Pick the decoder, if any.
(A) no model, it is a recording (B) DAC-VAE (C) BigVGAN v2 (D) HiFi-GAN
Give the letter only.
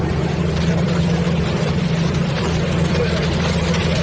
C